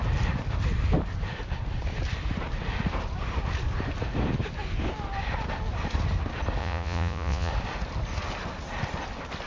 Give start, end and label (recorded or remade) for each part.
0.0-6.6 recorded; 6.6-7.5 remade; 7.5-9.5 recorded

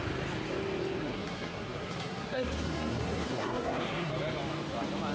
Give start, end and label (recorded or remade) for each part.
0.0-1.0 recorded; 1.0-4.1 remade; 4.1-5.1 recorded

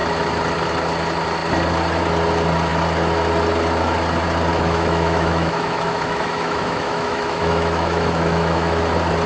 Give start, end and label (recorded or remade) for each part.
0.0-4.5 recorded; 4.5-8.8 remade; 8.8-9.3 recorded

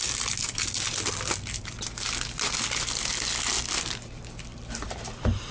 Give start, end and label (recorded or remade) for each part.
0.0-4.5 recorded; 4.5-5.5 remade

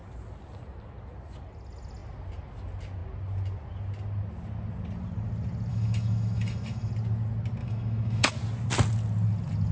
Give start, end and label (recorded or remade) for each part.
0.0-5.7 recorded; 5.7-6.9 remade; 6.9-7.6 recorded; 7.6-8.3 remade; 8.3-9.7 recorded